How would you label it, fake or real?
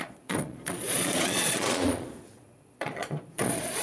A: fake